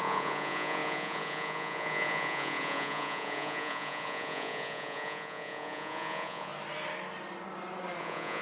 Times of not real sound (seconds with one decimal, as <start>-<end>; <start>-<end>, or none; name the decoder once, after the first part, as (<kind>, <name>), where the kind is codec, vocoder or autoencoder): 0.0-6.5 (vocoder, Vocos); 8.0-8.4